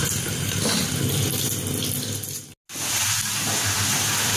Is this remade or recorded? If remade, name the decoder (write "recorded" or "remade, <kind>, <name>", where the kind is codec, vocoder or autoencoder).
recorded